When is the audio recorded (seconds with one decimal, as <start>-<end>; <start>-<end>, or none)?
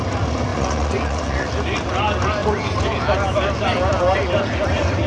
0.0-0.5; 1.5-5.1